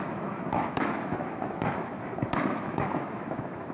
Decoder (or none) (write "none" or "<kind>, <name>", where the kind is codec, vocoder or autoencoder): autoencoder, DAC-VAE